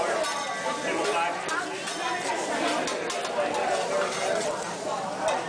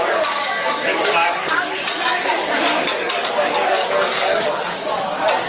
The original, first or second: first